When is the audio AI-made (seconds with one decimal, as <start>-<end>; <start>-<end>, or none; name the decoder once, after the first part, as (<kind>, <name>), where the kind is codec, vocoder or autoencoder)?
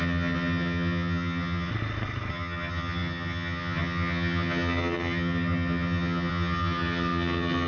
0.0-1.7 (vocoder, HiFi-GAN); 2.3-7.7